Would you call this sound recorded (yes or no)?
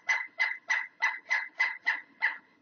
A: no